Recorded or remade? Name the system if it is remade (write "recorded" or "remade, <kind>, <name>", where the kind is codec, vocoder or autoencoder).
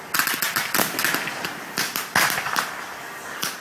recorded